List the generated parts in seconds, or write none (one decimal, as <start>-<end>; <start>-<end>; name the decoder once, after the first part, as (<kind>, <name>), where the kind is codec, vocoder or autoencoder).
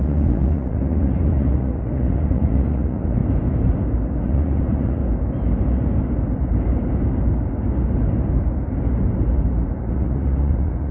0.0-3.2 (vocoder, Vocos); 4.2-5.0; 9.8-10.9